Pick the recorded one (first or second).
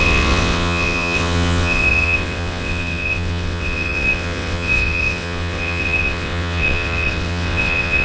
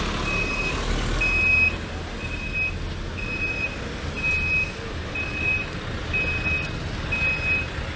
second